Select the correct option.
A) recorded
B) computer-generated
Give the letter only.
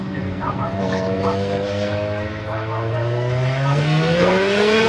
B